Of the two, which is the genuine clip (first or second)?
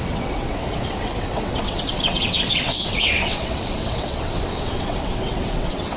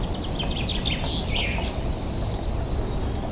second